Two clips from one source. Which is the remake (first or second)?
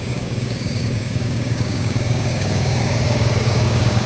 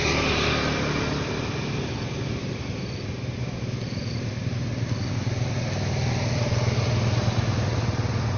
first